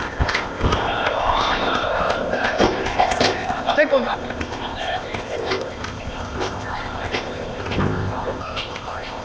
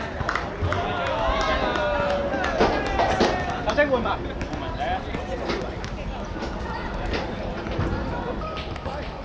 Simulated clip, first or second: first